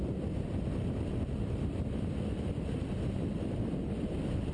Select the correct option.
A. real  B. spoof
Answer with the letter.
A